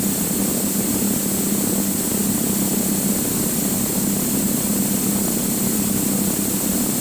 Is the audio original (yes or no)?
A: yes